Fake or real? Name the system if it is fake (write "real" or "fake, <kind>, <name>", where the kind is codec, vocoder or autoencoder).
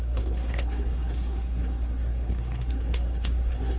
fake, codec, SNAC